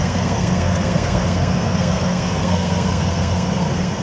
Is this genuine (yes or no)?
no